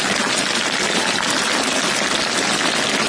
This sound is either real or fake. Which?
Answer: real